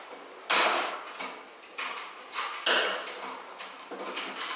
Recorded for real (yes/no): yes